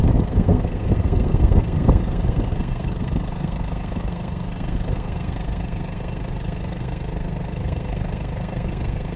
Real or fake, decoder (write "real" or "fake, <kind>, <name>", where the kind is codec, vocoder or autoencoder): fake, codec, SNAC